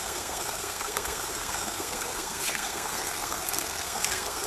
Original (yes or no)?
no